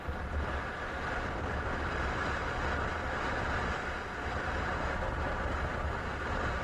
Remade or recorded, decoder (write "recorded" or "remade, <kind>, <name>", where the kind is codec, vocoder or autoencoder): recorded